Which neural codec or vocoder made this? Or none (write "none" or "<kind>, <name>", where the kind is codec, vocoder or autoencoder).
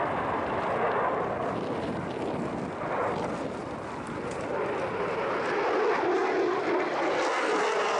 none